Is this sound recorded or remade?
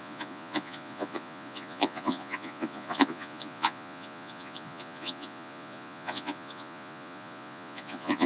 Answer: remade